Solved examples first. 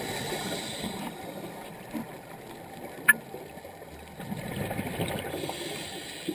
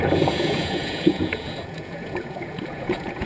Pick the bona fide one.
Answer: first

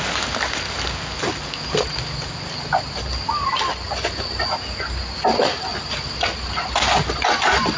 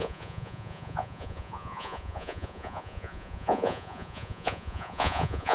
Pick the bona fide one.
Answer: first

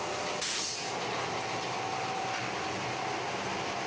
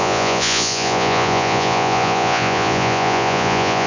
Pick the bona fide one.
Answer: first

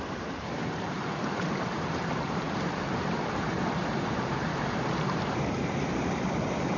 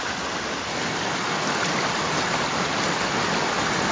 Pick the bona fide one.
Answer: second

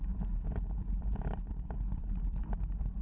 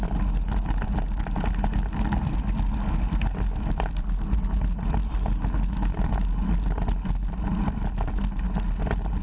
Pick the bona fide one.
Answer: second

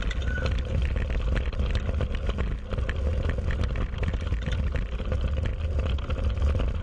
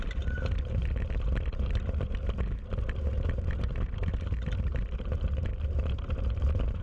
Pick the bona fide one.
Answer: first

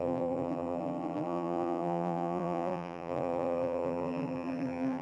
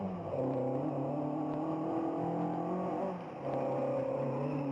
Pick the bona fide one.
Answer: second